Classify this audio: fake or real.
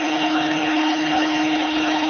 fake